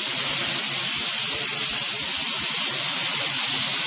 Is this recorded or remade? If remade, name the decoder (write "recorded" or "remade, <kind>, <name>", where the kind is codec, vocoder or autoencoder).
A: recorded